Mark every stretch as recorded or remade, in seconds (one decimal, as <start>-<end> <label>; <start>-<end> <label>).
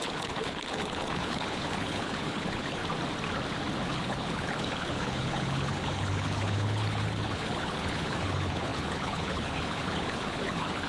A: 0.0-2.8 remade; 2.8-3.9 recorded; 3.9-10.9 remade